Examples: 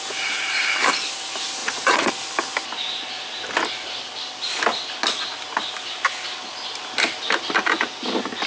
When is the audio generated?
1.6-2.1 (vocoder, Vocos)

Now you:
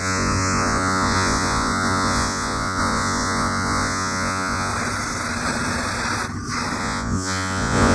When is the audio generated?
0.0-4.7 (vocoder, Vocos); 6.8-7.9

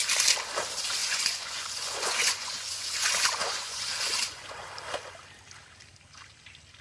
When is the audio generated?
1.0-4.7 (vocoder, Vocos)

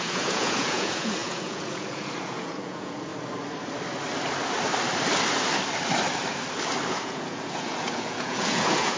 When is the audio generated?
0.0-3.1 (vocoder, Vocos); 6.9-9.0

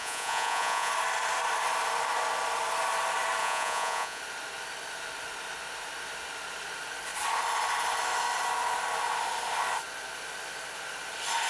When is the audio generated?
0.0-0.9 (vocoder, Vocos); 3.4-4.2

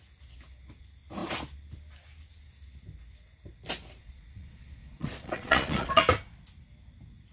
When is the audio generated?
4.0-6.0 (vocoder, Vocos)

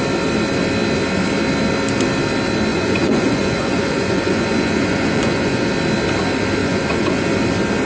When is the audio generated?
2.7-5.7 (vocoder, Vocos); 6.6-7.3

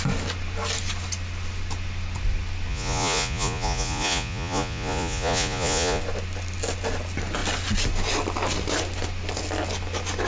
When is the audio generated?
2.7-6.0 (vocoder, Vocos)